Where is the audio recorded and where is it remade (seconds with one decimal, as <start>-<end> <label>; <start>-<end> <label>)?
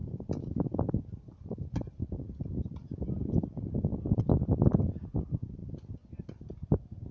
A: 0.0-7.1 recorded